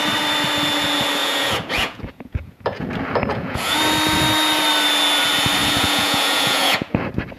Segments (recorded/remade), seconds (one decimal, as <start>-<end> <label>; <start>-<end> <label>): 0.0-1.2 recorded; 1.2-2.9 remade; 2.9-3.3 recorded; 3.3-3.8 remade; 3.8-5.6 recorded; 5.6-7.0 remade; 7.0-7.4 recorded